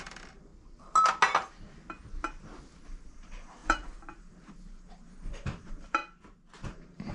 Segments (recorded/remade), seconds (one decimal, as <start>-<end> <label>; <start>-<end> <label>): 0.0-0.5 remade; 0.5-2.9 recorded; 2.9-6.0 remade; 6.0-6.6 recorded; 6.6-7.1 remade